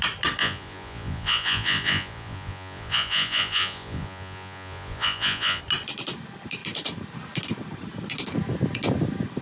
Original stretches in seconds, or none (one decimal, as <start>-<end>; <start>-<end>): 0.0-0.4; 5.6-9.4